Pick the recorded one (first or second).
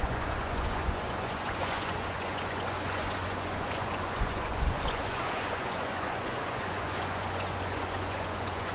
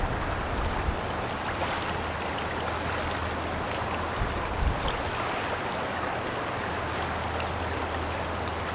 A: second